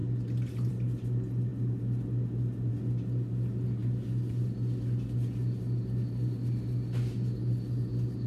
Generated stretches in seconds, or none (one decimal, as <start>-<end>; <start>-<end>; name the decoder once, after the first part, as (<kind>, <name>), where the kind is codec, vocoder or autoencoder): none